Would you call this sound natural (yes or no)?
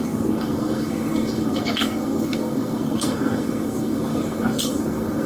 no